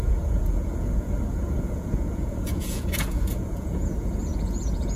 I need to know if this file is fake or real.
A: fake